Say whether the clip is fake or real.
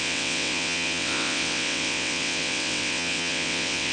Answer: fake